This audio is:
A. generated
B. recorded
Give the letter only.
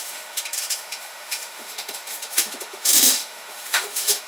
A